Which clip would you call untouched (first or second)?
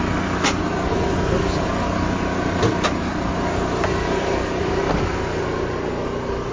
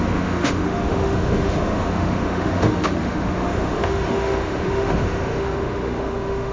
first